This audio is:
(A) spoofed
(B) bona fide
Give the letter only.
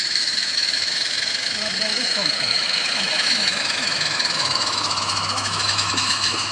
A